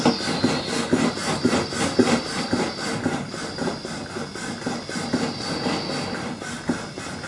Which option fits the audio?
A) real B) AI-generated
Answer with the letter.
A